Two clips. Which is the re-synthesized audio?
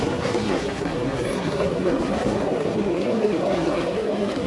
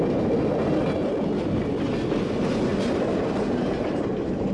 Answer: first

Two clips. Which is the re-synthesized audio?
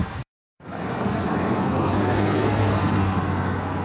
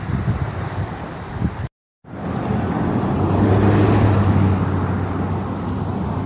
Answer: first